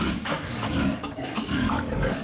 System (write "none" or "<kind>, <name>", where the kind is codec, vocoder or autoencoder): codec, DAC